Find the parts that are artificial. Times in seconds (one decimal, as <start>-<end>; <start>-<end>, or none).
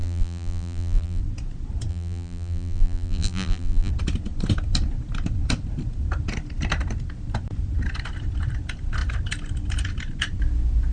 0.0-1.2; 1.9-3.9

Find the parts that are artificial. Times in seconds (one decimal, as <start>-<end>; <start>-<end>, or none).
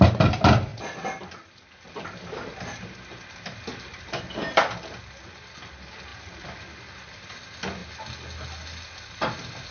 0.7-4.2; 6.1-6.7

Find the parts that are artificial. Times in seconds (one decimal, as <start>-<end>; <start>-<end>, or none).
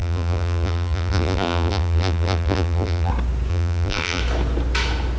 0.0-3.1; 3.5-4.2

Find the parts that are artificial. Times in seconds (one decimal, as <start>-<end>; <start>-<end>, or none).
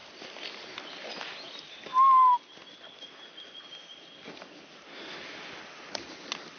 0.0-0.5